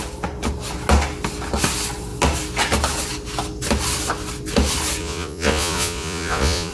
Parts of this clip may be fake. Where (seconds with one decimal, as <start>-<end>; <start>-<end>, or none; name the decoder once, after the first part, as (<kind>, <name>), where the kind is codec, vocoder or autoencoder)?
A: 5.0-6.7 (vocoder, Vocos)

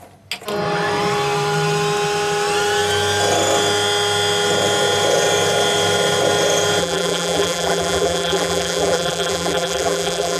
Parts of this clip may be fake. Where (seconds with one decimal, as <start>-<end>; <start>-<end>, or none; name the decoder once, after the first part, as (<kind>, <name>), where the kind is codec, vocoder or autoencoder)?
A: 6.8-10.4 (vocoder, BigVGAN v2)

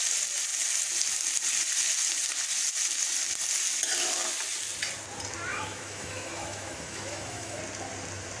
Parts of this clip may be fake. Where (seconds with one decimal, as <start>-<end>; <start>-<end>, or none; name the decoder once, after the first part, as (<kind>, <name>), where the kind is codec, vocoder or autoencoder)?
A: 5.5-7.6 (autoencoder, DAC-VAE)

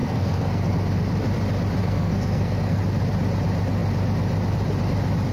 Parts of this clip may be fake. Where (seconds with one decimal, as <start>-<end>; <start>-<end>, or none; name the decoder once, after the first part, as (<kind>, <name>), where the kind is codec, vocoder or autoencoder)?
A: 0.0-0.7 (codec, SNAC); 1.8-2.8